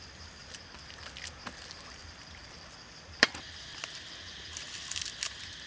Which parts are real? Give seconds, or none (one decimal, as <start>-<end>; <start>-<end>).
0.0-2.0